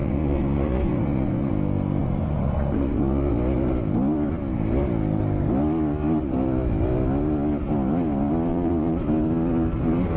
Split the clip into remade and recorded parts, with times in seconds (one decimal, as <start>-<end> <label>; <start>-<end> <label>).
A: 0.0-1.5 remade; 1.5-2.0 recorded; 2.0-3.3 remade; 3.3-8.5 recorded; 8.5-9.0 remade; 9.0-10.2 recorded